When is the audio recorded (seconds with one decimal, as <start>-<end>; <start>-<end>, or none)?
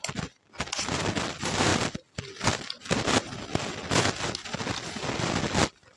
0.0-6.0